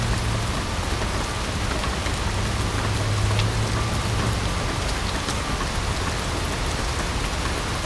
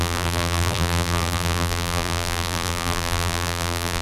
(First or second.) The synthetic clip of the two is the second